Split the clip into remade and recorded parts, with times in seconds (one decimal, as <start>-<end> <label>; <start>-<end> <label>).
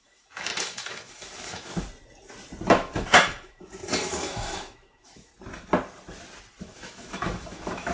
0.0-1.7 remade; 1.7-2.7 recorded; 2.7-5.3 remade; 5.3-6.6 recorded; 6.6-7.9 remade